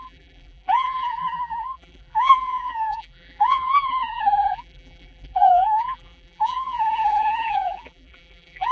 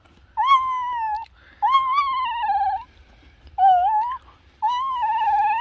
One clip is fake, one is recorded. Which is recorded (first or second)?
second